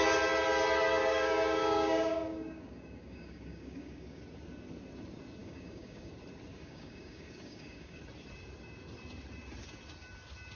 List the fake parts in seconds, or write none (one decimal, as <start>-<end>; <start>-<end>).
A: 1.0-4.2; 5.4-6.1; 6.5-8.0